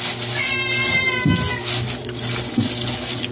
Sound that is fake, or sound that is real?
real